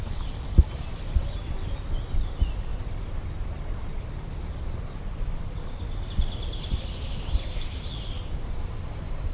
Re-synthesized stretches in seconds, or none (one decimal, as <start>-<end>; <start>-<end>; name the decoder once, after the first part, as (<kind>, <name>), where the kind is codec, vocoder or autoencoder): none